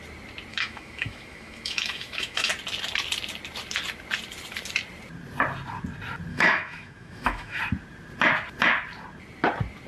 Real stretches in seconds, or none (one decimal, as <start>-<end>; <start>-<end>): 0.0-0.5; 2.5-6.3; 7.6-9.9